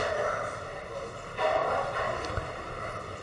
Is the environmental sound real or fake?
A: real